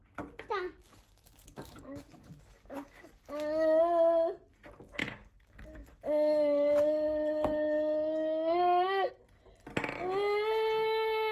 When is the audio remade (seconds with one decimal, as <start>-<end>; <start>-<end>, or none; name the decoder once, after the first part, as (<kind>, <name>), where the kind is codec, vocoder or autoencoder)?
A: 0.8-3.8 (codec, DAC); 5.0-9.1